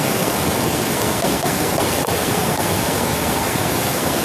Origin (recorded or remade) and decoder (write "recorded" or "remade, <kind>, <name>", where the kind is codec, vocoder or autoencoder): remade, codec, SNAC